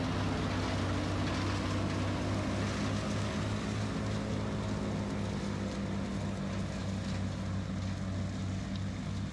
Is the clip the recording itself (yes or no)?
yes